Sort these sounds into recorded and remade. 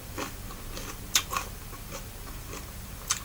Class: remade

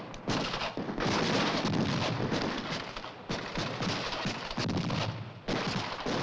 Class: recorded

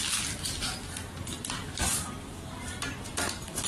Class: remade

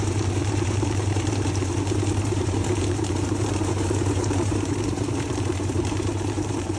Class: remade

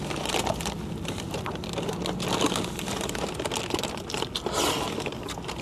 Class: recorded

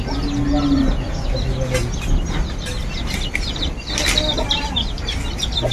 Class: recorded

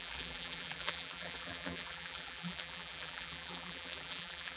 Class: remade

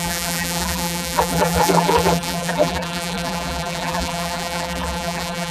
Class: remade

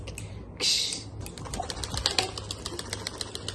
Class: recorded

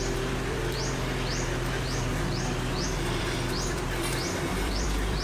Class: remade